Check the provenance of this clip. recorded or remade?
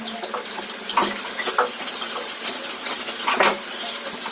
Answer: recorded